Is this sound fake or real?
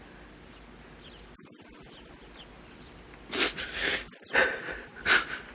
real